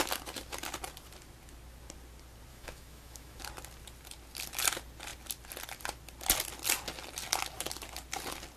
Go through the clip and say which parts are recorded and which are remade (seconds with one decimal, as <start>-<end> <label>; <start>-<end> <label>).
0.0-2.5 recorded; 2.5-3.4 remade; 3.4-8.6 recorded